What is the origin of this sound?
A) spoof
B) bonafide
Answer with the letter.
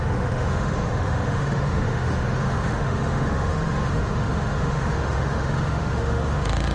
A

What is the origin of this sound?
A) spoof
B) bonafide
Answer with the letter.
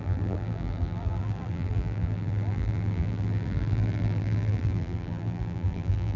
A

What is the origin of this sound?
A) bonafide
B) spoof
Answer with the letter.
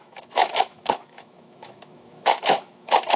B